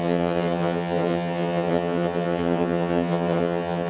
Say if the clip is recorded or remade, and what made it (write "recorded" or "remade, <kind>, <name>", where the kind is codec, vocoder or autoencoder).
remade, vocoder, HiFi-GAN